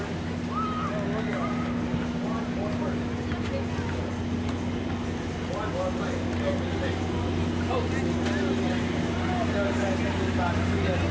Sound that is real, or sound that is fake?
real